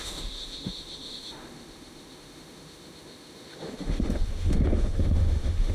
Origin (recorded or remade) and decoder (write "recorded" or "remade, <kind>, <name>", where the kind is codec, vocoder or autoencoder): remade, autoencoder, DAC-VAE